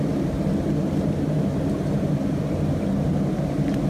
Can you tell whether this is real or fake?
real